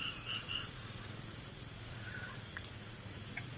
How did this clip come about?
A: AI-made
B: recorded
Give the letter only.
A